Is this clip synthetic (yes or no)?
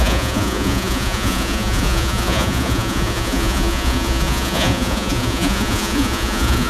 yes